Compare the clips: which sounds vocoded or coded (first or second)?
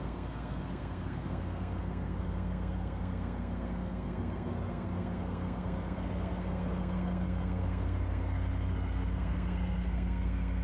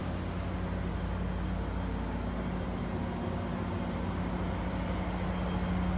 first